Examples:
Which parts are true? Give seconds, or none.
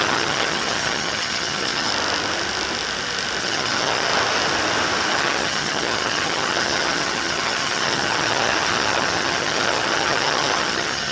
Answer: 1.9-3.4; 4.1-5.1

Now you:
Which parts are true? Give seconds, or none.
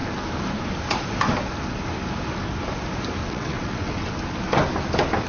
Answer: 0.0-3.2; 4.1-5.3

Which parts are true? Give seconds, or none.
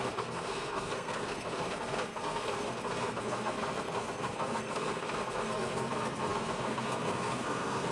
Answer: none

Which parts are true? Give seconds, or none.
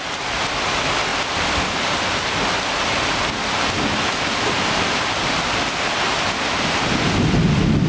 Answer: 0.0-7.9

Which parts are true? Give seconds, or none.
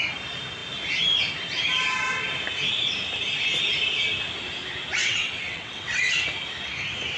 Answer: 0.0-5.0; 6.2-7.2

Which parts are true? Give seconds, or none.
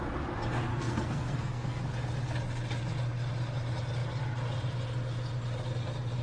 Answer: 0.0-0.7; 1.8-6.2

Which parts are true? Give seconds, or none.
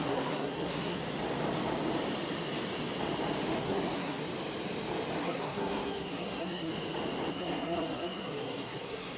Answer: 1.0-3.6; 4.2-5.2; 6.7-7.3